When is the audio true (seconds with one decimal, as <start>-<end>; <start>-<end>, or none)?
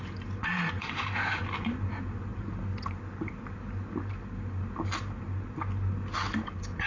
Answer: 0.0-0.8; 1.4-6.9